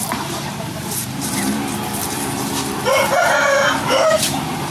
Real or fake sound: fake